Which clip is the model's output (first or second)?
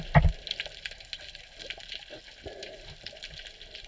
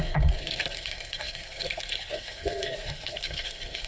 second